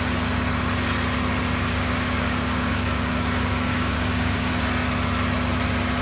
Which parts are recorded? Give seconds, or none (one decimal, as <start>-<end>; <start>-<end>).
0.0-1.7; 4.5-6.0